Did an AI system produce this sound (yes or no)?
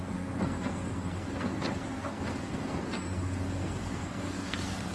yes